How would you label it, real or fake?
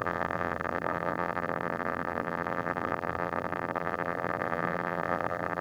fake